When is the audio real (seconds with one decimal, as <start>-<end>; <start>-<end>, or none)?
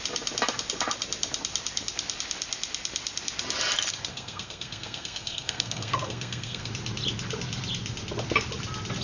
0.0-4.1; 6.7-9.0